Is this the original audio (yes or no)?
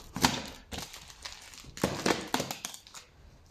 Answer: yes